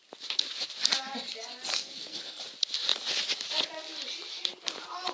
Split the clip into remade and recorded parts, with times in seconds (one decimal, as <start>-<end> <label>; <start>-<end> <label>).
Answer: 0.0-1.7 recorded; 1.7-2.4 remade; 2.4-5.1 recorded